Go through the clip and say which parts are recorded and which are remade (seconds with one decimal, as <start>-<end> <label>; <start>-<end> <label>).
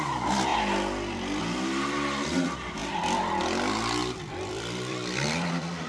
0.0-4.0 recorded; 4.0-5.9 remade